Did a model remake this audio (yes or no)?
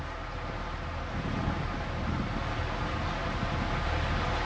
no